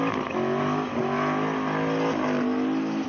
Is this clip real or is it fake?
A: real